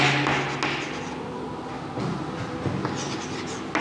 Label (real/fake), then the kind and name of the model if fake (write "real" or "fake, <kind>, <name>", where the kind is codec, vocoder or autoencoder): real